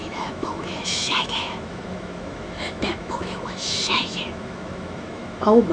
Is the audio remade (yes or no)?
yes